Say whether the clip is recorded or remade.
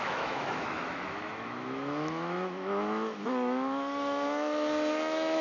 remade